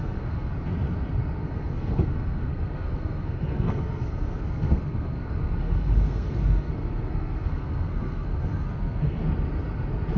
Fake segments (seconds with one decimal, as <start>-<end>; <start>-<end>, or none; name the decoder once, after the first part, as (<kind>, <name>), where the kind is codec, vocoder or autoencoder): 0.0-0.5 (codec, SNAC); 1.4-9.2